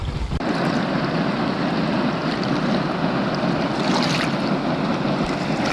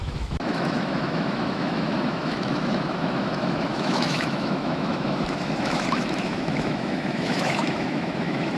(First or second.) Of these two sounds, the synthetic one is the second